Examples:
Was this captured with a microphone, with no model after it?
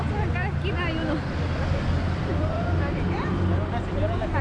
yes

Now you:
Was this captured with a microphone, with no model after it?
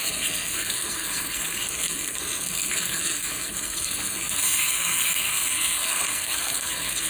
no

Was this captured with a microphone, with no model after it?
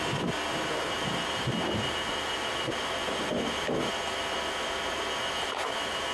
yes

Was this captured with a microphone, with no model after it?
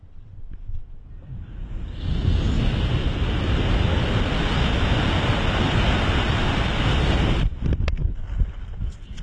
yes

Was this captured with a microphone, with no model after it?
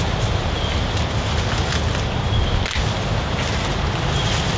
yes